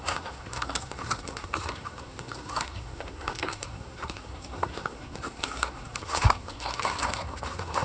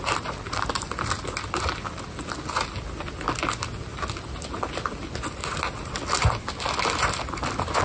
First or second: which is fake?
first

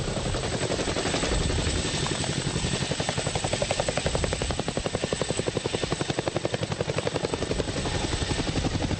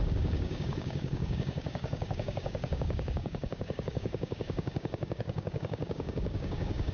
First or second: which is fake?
second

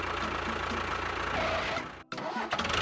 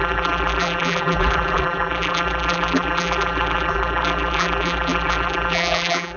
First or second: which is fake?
second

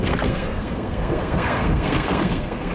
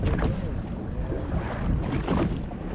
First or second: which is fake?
first